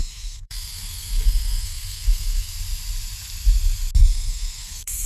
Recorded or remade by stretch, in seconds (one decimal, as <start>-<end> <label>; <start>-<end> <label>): 0.0-2.5 remade; 2.5-4.1 recorded; 4.1-5.1 remade